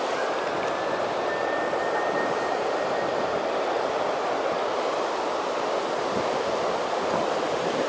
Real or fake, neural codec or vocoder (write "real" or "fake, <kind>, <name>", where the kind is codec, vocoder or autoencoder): real